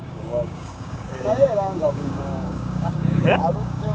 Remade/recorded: remade